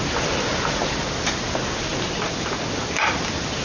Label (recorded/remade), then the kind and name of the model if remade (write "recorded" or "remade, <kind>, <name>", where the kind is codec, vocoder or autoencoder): recorded